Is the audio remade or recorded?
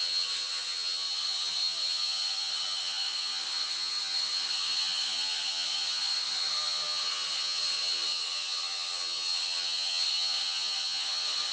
remade